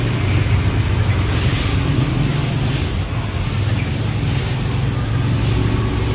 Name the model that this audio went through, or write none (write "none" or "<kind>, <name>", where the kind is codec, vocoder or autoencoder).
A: none